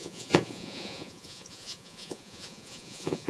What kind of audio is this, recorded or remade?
remade